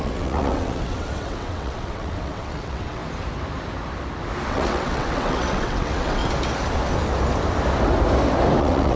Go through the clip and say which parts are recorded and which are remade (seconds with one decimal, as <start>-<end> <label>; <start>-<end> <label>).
0.0-3.0 remade; 3.0-4.5 recorded; 4.5-6.2 remade; 6.2-8.6 recorded; 8.6-9.0 remade